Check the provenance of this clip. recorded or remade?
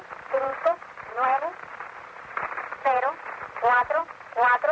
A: recorded